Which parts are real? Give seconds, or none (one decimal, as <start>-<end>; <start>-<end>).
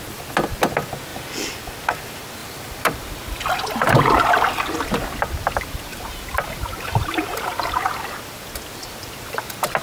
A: 0.0-1.1; 1.6-2.4; 3.4-5.9; 7.7-9.8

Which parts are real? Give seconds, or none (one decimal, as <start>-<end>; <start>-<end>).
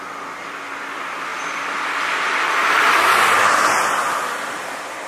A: 0.0-1.3; 2.0-5.1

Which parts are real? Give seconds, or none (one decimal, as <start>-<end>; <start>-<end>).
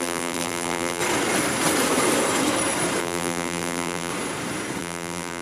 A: 1.0-3.0; 4.1-4.8